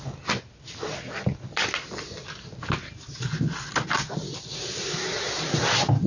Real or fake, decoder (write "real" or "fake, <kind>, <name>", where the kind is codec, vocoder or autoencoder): real